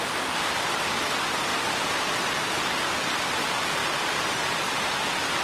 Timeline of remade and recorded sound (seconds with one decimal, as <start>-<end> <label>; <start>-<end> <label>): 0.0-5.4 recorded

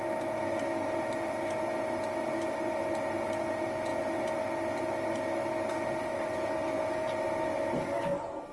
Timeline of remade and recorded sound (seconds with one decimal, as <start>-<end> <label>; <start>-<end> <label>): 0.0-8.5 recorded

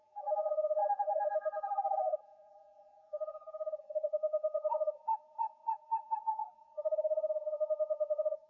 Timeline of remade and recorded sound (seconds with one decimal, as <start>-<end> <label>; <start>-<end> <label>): 0.0-8.5 remade